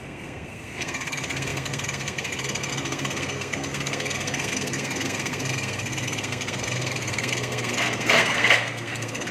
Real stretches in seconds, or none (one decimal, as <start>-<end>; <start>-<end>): none